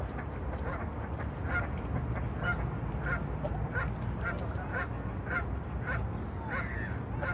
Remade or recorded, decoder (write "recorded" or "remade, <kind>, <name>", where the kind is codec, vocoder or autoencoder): recorded